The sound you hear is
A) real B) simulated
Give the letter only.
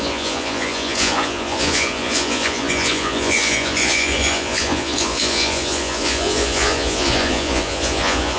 B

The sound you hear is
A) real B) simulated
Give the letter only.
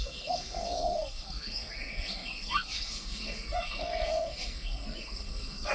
B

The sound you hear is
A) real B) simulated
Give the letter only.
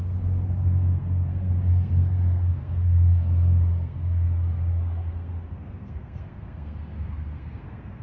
B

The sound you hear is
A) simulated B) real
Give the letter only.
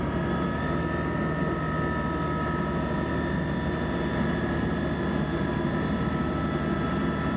B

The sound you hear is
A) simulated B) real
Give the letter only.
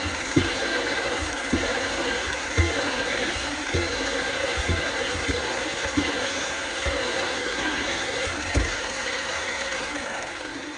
A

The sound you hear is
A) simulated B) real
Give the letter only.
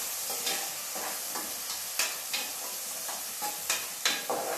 B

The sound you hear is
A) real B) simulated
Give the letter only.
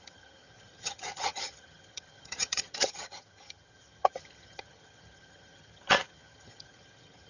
B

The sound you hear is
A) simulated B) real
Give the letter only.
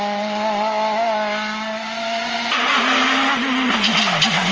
B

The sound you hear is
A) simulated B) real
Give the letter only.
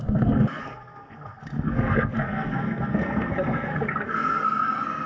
A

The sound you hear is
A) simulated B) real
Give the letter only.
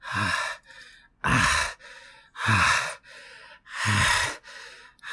B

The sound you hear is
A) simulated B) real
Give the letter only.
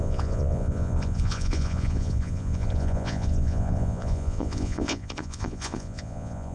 A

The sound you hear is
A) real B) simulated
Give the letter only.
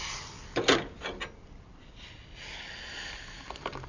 A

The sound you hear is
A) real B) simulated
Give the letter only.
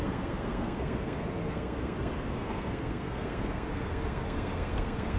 B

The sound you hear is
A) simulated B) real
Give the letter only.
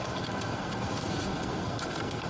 A